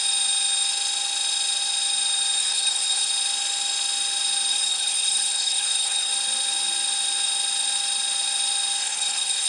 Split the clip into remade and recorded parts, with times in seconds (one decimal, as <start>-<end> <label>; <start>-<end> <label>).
0.0-2.4 recorded; 2.4-3.1 remade; 3.1-4.5 recorded; 4.5-6.1 remade; 6.1-8.8 recorded; 8.8-9.5 remade